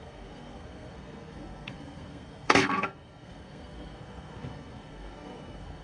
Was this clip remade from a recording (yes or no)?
yes